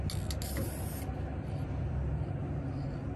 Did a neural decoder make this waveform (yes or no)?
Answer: no